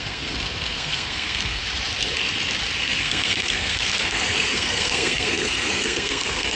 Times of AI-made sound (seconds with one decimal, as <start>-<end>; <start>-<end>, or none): 0.0-1.6; 2.8-6.6